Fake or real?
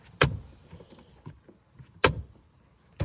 real